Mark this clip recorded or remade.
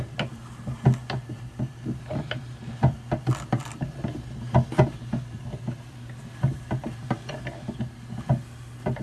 recorded